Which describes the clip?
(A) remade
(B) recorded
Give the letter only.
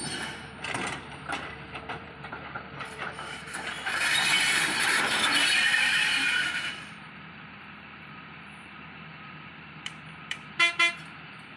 A